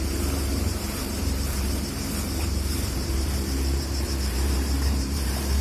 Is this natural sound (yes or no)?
no